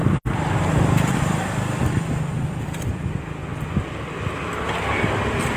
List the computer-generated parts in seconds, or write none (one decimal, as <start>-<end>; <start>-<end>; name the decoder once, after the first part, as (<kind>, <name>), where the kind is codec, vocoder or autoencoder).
0.0-3.4 (vocoder, BigVGAN v2)